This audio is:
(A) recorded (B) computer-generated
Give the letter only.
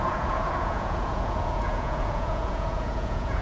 B